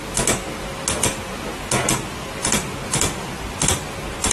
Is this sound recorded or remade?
recorded